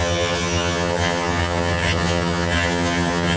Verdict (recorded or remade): remade